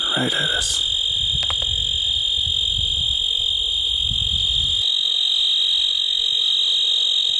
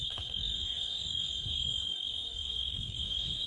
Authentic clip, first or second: first